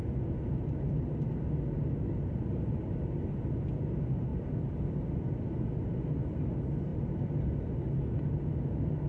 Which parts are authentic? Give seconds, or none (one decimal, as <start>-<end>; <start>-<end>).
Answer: 0.0-9.1